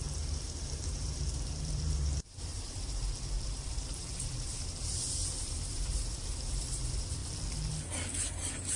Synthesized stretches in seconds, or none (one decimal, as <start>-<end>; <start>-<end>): 0.0-7.2; 8.2-8.8